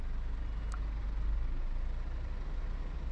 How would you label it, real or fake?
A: real